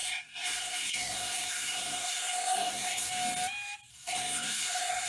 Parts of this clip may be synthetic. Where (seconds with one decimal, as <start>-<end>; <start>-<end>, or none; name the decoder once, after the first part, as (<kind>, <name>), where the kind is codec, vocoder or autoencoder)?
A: 0.0-3.1 (codec, SNAC); 3.9-5.1